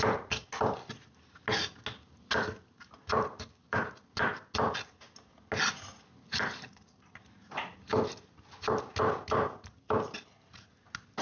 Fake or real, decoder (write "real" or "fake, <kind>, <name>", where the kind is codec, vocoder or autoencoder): real